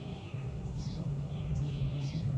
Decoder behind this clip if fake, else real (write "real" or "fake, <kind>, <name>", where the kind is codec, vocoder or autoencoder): fake, codec, SNAC